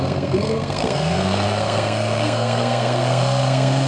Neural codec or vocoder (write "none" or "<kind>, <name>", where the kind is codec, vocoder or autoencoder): codec, SNAC